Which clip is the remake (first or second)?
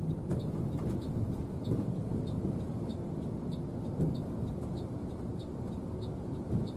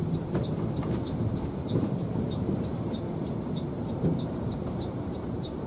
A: second